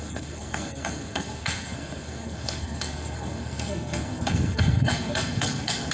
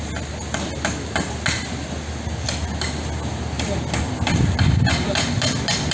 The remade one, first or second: first